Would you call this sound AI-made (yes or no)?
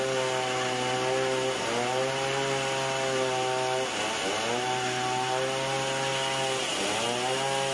no